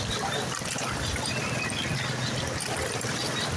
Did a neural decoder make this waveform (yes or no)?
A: yes